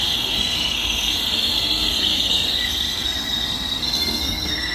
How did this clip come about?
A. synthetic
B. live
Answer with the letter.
A